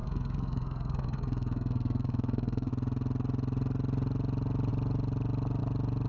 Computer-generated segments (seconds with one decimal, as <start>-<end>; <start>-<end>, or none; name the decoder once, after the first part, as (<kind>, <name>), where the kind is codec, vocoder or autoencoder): 0.0-2.7 (codec, SNAC)